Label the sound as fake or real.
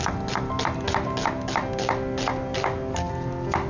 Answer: real